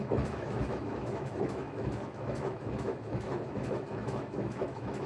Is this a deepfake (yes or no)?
yes